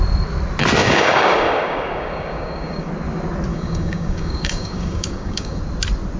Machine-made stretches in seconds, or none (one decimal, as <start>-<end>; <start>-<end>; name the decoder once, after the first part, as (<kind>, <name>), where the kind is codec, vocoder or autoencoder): 0.8-2.9 (codec, DAC); 3.5-5.6